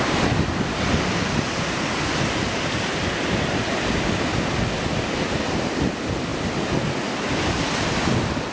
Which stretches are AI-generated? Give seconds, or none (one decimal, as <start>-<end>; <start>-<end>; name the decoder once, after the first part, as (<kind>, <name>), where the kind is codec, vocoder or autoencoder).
none